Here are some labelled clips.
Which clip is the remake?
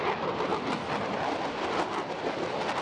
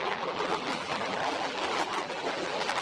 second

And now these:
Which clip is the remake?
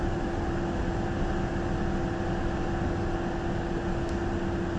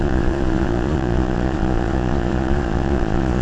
second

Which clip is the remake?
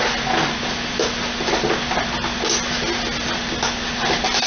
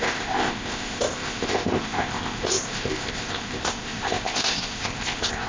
second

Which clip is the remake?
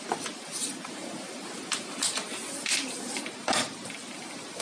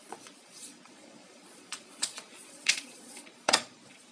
second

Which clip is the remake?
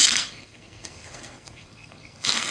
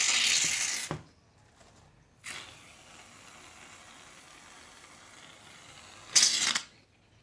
first